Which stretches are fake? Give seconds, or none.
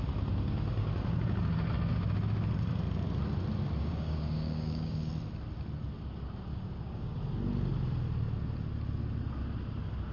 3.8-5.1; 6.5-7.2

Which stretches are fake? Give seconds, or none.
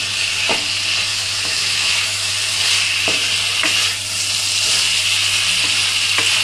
1.1-2.3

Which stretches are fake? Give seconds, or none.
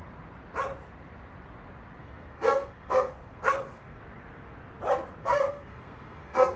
2.0-4.0; 5.2-6.6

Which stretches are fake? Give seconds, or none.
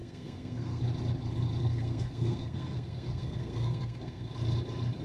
0.0-0.8; 1.6-4.3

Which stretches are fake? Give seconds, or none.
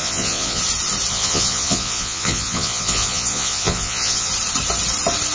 0.0-0.6; 1.1-4.3